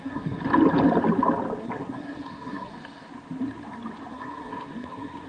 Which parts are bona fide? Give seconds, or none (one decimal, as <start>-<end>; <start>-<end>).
0.4-1.6; 2.7-4.1